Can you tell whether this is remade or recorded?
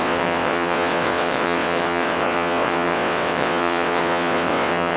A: remade